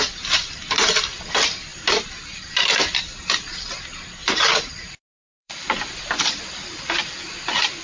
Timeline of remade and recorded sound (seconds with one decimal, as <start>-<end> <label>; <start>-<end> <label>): 0.0-1.7 recorded; 1.7-2.5 remade; 2.5-4.2 recorded; 4.2-7.8 remade